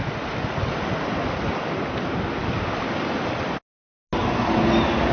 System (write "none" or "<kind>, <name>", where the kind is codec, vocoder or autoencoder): none